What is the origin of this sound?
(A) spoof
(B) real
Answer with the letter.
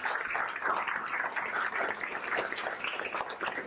B